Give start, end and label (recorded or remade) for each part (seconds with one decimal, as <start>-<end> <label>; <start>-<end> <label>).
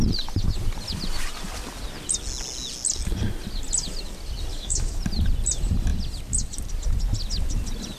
0.0-4.5 recorded; 4.5-5.0 remade; 5.0-8.0 recorded